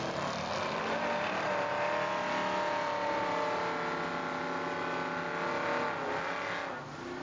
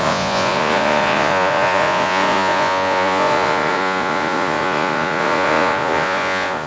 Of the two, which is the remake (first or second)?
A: second